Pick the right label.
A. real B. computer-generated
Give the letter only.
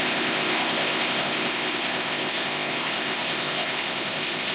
B